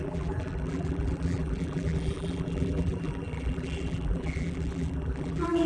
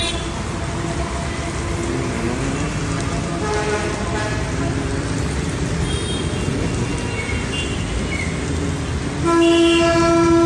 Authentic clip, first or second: second